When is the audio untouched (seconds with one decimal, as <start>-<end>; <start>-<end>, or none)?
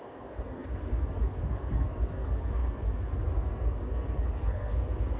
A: none